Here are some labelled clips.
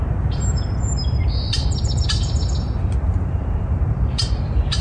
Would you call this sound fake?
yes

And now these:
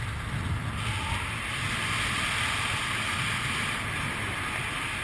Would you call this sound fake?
no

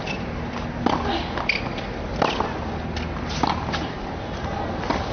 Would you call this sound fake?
no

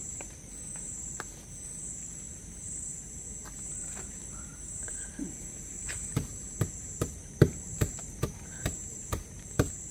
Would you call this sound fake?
yes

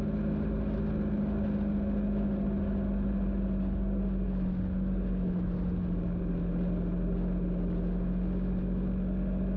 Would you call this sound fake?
no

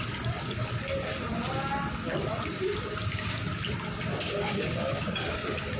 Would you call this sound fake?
no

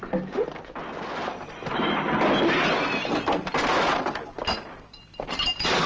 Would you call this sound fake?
no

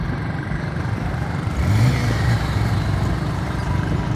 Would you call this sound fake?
yes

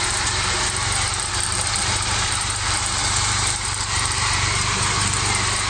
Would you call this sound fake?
yes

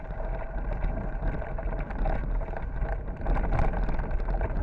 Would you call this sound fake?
no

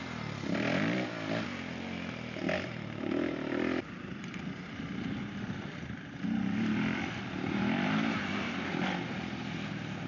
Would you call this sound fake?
yes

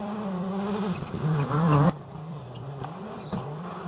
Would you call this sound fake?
yes